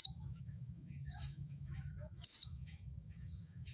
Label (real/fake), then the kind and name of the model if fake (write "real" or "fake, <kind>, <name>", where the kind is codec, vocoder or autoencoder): fake, autoencoder, DAC-VAE